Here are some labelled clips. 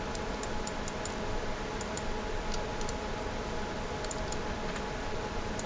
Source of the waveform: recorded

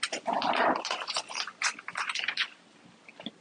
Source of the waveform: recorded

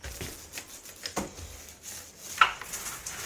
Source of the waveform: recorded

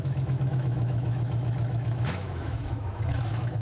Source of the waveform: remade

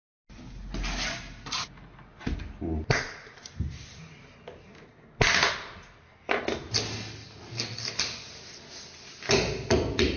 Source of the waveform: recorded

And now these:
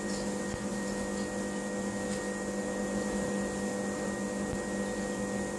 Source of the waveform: recorded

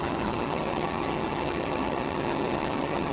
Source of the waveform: remade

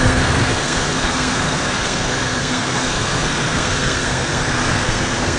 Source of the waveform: remade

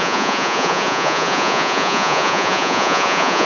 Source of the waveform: remade